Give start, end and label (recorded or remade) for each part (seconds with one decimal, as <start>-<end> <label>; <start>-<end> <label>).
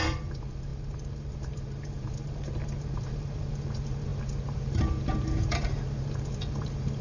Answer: 0.0-7.0 remade